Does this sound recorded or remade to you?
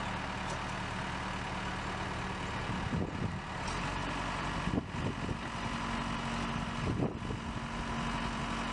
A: recorded